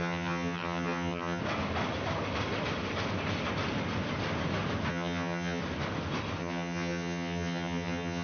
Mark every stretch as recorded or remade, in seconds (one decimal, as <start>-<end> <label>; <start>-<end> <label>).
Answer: 0.0-1.4 remade; 1.4-4.9 recorded; 4.9-5.6 remade; 5.6-6.4 recorded; 6.4-8.2 remade